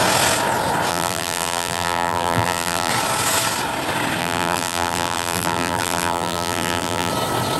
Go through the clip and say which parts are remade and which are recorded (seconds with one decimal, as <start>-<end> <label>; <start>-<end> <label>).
0.0-0.9 recorded; 0.9-2.9 remade; 2.9-4.2 recorded; 4.2-7.1 remade; 7.1-7.6 recorded